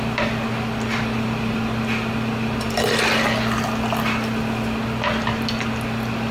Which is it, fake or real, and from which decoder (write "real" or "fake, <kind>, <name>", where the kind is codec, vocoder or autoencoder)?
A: real